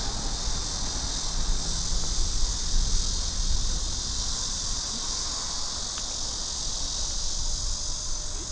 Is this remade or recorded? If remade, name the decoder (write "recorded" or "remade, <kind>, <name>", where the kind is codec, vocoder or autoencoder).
recorded